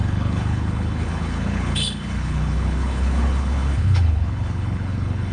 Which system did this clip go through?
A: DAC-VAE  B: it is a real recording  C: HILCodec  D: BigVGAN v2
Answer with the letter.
C